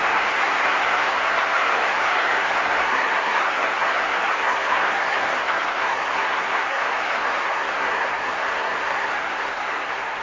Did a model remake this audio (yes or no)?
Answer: yes